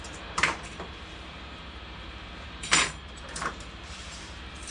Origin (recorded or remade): remade